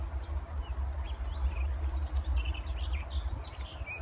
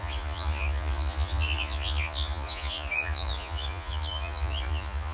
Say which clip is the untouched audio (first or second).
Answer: first